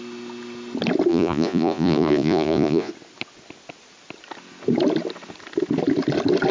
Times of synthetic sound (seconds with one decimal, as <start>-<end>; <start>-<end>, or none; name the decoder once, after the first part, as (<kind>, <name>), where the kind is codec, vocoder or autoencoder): 1.1-2.9 (vocoder, Vocos)